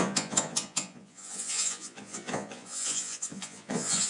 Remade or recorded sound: remade